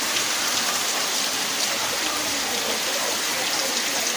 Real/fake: real